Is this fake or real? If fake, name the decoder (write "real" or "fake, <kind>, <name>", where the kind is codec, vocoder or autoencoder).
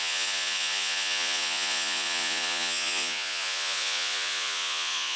fake, vocoder, Vocos